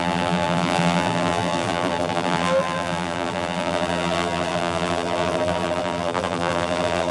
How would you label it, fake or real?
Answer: fake